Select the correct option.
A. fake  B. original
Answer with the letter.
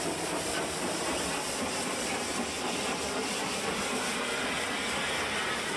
B